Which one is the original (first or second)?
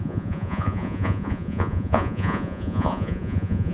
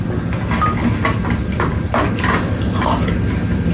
second